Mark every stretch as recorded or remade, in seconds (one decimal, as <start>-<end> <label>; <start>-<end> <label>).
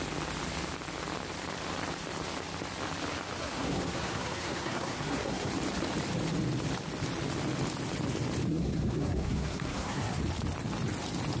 0.0-3.4 recorded; 3.4-5.5 remade; 5.5-8.5 recorded; 8.5-10.2 remade; 10.2-11.4 recorded